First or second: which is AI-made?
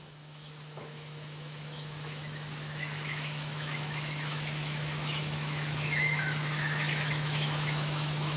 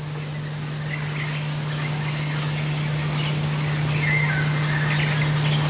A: first